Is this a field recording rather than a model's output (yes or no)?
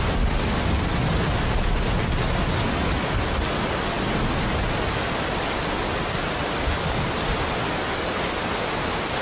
yes